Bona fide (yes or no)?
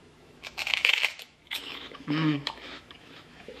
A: no